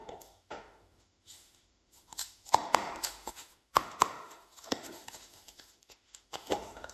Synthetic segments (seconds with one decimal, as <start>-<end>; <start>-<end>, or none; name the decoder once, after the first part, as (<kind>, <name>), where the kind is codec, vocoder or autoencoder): 0.0-6.9 (autoencoder, DAC-VAE)